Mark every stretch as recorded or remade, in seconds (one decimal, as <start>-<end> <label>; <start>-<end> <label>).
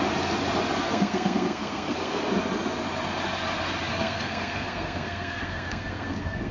0.0-0.9 recorded; 0.9-2.3 remade; 2.3-3.9 recorded; 3.9-6.5 remade